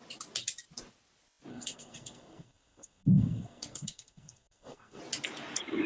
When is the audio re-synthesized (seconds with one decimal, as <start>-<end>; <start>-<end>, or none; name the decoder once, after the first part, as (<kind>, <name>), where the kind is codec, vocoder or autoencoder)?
1.5-5.0 (codec, SNAC)